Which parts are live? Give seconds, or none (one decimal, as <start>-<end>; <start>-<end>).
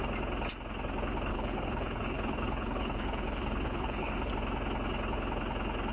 0.0-1.3; 4.3-5.9